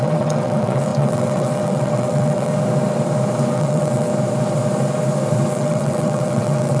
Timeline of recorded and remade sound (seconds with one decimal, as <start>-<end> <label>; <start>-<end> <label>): 0.0-2.5 remade; 2.5-3.5 recorded; 3.5-4.1 remade; 4.1-5.5 recorded; 5.5-6.8 remade